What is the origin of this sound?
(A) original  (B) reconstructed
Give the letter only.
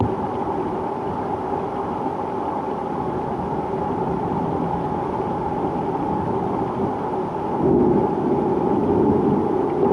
A